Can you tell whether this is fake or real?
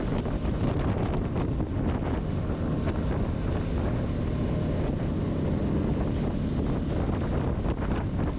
real